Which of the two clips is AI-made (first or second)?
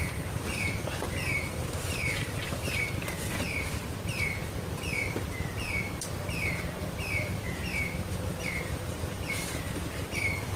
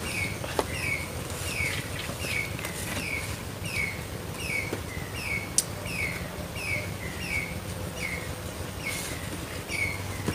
first